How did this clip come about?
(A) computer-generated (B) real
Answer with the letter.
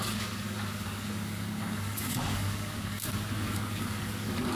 A